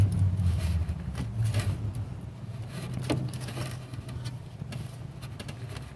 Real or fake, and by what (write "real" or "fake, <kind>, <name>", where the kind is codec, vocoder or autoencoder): real